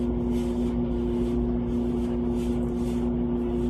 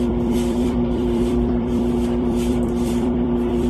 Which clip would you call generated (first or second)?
second